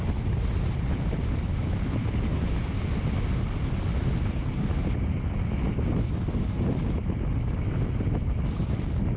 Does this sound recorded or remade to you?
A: recorded